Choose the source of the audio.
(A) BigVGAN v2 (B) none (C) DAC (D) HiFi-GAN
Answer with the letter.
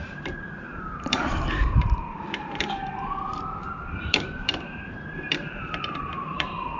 A